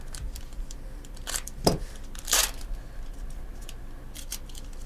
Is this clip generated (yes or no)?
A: yes